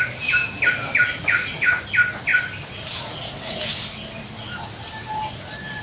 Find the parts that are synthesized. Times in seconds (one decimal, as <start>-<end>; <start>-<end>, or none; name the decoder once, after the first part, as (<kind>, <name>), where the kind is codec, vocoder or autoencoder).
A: 1.1-1.8 (vocoder, Vocos)